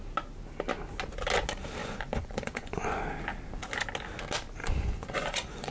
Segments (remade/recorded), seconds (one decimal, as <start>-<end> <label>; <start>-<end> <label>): 0.0-1.8 recorded; 1.8-3.0 remade; 3.0-4.6 recorded; 4.6-5.7 remade